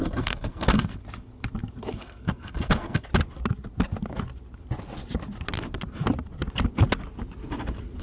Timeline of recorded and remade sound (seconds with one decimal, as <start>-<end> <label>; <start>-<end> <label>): 0.0-1.0 remade; 1.0-1.9 recorded; 1.9-3.1 remade; 3.1-8.0 recorded